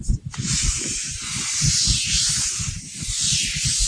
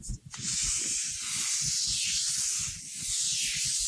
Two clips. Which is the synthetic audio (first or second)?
first